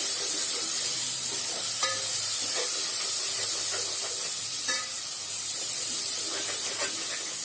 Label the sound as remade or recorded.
remade